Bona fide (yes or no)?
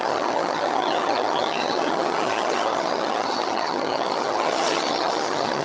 no